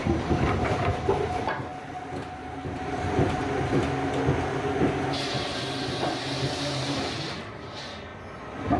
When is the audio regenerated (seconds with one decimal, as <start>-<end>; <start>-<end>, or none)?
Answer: 0.0-1.7; 2.3-3.4; 5.2-8.1